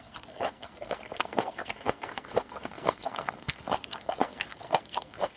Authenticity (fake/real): fake